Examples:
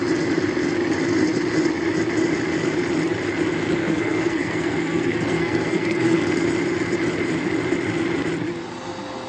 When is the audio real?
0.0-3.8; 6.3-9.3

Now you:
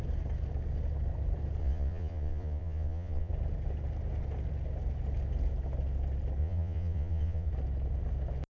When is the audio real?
0.0-1.6; 3.3-6.4; 7.5-8.5

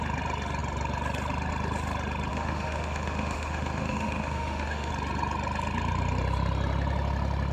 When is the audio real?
0.0-2.3; 4.9-7.5

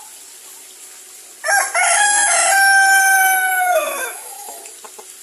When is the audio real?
0.0-1.8; 2.5-3.5; 4.6-5.2

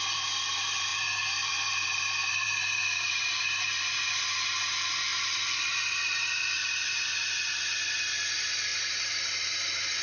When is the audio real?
0.0-2.2; 3.3-5.1; 6.7-8.7

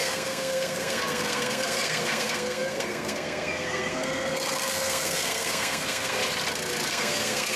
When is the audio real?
6.2-6.9

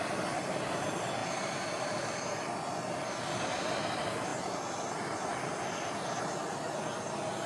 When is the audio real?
0.0-7.5